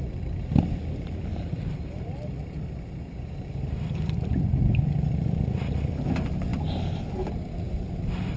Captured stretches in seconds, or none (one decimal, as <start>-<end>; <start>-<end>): 0.0-8.4